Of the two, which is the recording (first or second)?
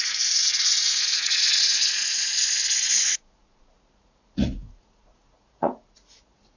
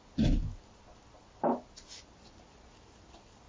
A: second